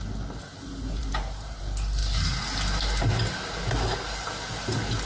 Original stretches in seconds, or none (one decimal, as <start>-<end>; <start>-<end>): 0.0-0.5; 1.6-5.0